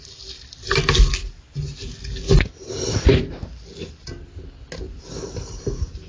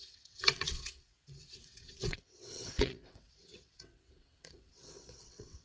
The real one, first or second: first